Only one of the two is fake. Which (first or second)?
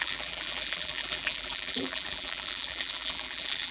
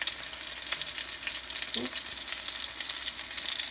first